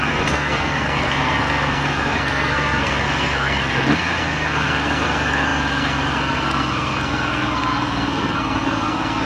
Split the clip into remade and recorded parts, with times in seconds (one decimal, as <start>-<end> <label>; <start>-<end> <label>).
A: 0.0-9.3 remade